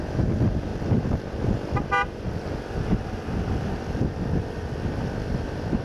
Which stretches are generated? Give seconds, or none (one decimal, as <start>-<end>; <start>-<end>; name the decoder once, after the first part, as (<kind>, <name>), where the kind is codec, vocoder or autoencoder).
none